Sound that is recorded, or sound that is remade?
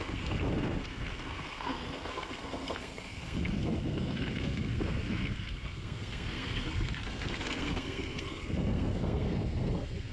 remade